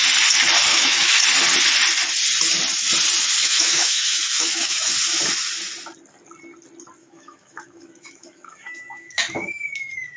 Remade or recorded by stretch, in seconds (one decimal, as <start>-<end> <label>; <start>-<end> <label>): 0.0-0.7 recorded; 0.7-1.2 remade; 1.2-3.4 recorded; 3.4-4.9 remade; 4.9-7.0 recorded; 7.0-10.2 remade